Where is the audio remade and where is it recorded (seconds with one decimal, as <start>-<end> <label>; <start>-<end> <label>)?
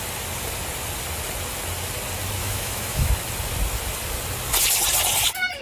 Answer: 0.0-2.4 recorded; 2.4-3.1 remade; 3.1-5.6 recorded